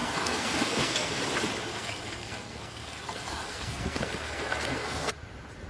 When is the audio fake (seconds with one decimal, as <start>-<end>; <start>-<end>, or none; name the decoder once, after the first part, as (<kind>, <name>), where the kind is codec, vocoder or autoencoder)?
0.0-1.2 (codec, SNAC); 1.7-5.1